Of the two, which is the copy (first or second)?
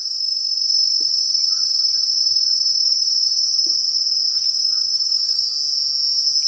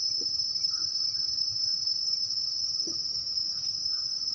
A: second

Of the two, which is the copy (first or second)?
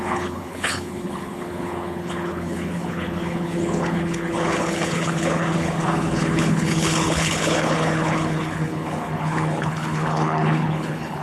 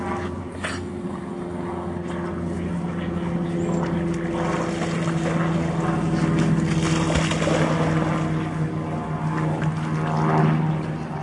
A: first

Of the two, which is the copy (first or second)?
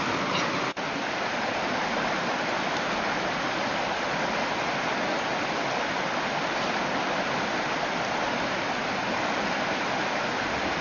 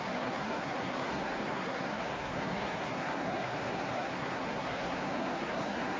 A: second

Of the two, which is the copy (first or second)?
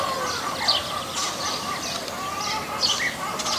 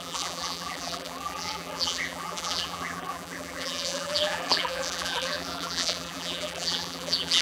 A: second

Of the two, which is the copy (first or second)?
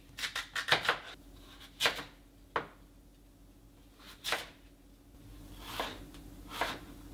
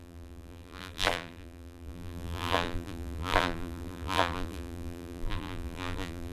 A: second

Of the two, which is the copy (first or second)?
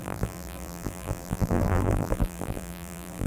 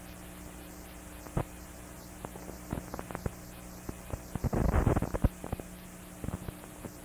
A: first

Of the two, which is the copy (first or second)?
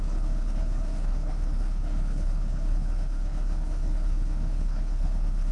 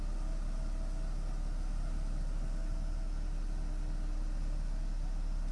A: first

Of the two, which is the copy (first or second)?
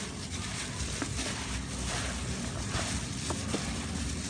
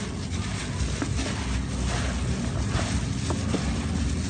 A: first